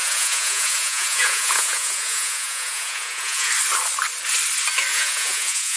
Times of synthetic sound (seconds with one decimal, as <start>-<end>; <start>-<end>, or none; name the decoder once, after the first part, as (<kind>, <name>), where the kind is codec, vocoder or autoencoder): 0.0-3.5 (vocoder, Vocos); 4.9-5.8